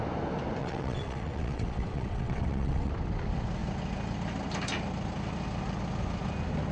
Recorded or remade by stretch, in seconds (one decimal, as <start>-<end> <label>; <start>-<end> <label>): 0.0-0.6 recorded; 0.6-2.9 remade; 2.9-6.7 recorded